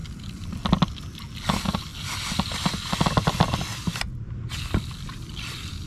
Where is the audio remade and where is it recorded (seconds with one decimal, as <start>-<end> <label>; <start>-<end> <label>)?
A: 0.0-1.2 remade; 1.2-5.9 recorded